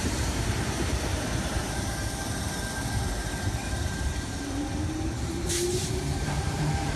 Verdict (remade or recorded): remade